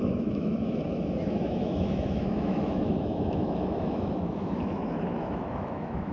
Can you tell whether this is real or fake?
fake